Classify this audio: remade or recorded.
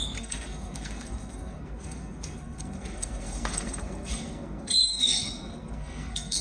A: remade